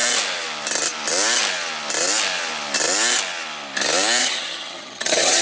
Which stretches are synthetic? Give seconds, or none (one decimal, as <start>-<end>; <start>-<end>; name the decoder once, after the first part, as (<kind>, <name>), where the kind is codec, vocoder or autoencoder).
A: 4.2-5.4 (vocoder, HiFi-GAN)